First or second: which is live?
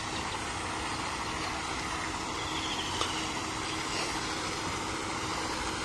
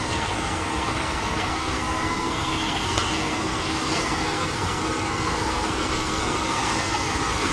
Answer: first